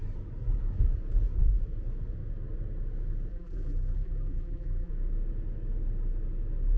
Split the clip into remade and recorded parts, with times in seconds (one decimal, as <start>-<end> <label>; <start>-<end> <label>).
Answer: 0.0-3.3 recorded; 3.3-4.9 remade; 4.9-6.8 recorded